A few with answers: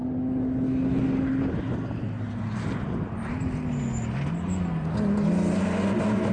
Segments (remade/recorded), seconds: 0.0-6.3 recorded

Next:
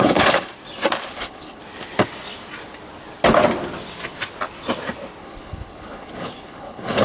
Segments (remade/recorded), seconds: 0.0-0.5 remade; 0.5-1.1 recorded; 1.1-1.6 remade; 1.6-5.2 recorded; 5.2-7.0 remade

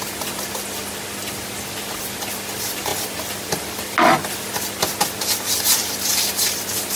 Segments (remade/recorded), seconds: 0.0-7.0 recorded

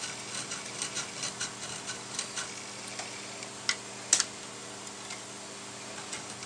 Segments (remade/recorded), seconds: 0.0-6.5 recorded

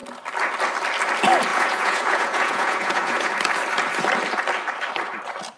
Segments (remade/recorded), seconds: 0.0-1.5 recorded; 1.5-3.3 remade; 3.3-5.6 recorded

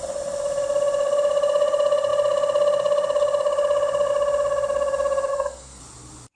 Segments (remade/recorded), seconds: 0.0-5.3 recorded; 5.3-5.8 remade; 5.8-6.4 recorded

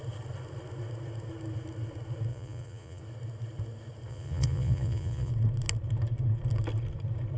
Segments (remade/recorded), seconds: 0.0-2.3 recorded; 2.3-3.0 remade; 3.0-4.1 recorded; 4.1-5.3 remade; 5.3-7.4 recorded

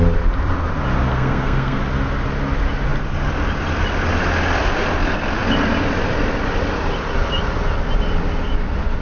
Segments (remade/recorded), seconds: 0.0-1.1 recorded; 1.1-1.8 remade; 1.8-9.0 recorded